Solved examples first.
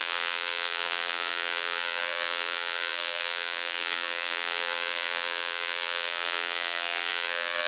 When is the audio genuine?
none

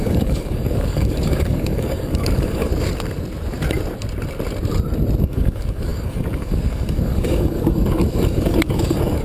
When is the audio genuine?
2.7-5.2

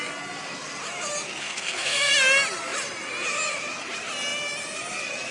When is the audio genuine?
0.0-1.4; 2.1-5.3